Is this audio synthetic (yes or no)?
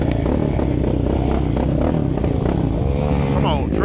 no